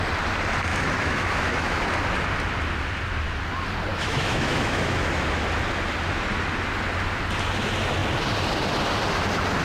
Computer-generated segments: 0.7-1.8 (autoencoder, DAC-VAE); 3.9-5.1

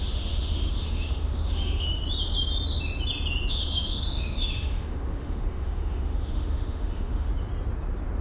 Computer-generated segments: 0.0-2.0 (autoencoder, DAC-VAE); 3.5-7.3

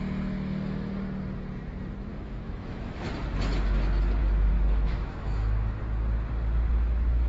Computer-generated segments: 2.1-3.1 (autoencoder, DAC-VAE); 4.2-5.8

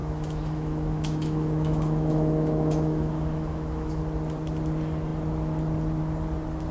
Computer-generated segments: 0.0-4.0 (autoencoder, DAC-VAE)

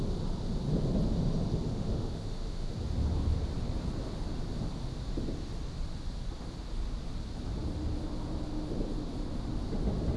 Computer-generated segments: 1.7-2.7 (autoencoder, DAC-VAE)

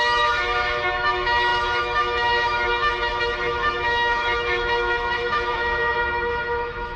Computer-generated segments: 0.0-7.0 (autoencoder, DAC-VAE)

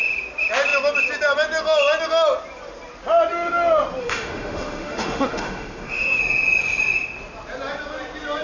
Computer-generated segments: 4.0-6.2 (autoencoder, DAC-VAE)